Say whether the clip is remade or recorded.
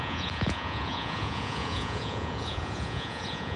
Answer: remade